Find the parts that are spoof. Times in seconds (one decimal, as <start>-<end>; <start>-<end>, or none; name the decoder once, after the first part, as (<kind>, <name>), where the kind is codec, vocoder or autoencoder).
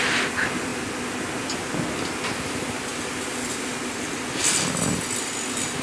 none